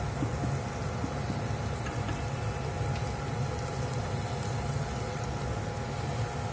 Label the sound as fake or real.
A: real